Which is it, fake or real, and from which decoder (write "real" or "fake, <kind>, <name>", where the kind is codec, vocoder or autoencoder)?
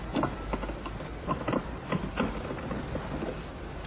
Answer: real